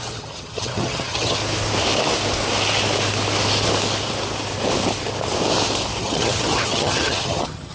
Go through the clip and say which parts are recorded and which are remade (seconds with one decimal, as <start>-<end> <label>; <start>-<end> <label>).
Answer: 0.0-1.4 remade; 1.4-6.0 recorded; 6.0-7.7 remade